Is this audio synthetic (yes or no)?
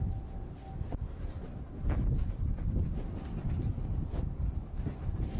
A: no